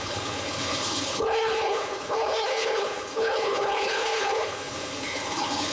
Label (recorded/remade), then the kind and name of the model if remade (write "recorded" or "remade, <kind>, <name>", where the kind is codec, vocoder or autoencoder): remade, codec, HILCodec